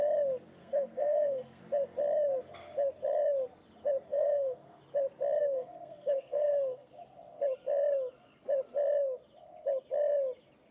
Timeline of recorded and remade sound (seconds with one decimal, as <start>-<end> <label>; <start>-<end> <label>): 0.0-0.6 recorded; 0.6-1.6 remade; 1.6-4.1 recorded; 4.1-4.8 remade; 4.8-5.4 recorded; 5.4-6.9 remade; 6.9-10.7 recorded